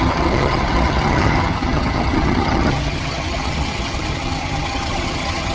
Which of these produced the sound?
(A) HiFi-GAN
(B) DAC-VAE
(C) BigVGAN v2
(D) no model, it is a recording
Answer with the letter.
A